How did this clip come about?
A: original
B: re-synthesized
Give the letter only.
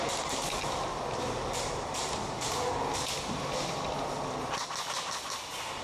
A